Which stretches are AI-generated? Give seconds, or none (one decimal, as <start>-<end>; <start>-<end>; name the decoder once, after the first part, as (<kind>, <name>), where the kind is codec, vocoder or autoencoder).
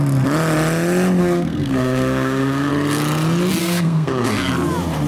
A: 1.2-2.7 (codec, SNAC); 3.6-4.5